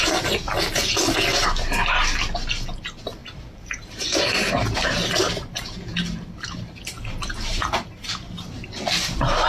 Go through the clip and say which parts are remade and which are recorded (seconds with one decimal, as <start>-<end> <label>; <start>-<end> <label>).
0.0-3.2 recorded; 3.2-4.5 remade; 4.5-7.5 recorded; 7.5-8.5 remade; 8.5-9.5 recorded